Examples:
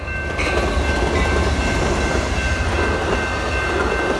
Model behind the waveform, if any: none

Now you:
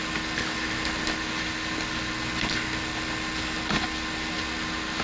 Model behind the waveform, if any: none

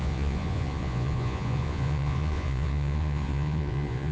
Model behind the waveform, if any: vocoder, Vocos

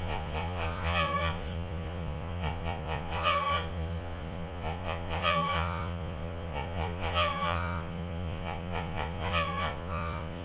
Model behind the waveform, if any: vocoder, Vocos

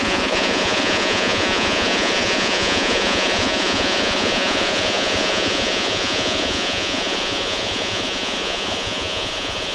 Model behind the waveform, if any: vocoder, Vocos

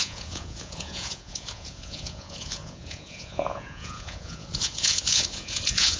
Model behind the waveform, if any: vocoder, Vocos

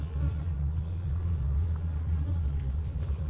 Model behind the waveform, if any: vocoder, Vocos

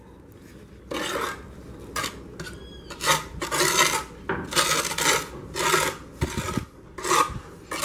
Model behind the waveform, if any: none